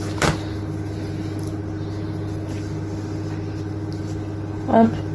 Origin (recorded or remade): recorded